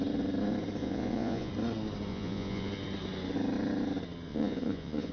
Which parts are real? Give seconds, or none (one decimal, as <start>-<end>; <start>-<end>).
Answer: 0.0-0.8; 1.5-2.1; 2.7-4.3